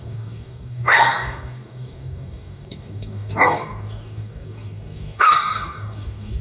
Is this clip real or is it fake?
fake